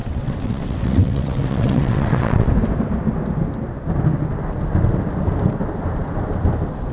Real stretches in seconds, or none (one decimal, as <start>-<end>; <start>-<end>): 2.5-6.9